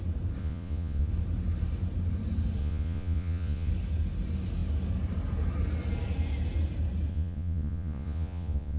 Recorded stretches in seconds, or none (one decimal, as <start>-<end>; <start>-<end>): 0.0-0.4; 1.1-2.6; 3.7-7.1